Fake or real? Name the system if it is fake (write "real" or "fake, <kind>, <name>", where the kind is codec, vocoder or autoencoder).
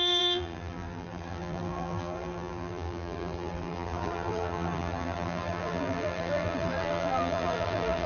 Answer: fake, vocoder, BigVGAN v2